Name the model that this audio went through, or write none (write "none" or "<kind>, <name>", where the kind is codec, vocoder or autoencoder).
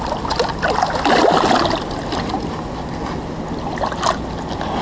none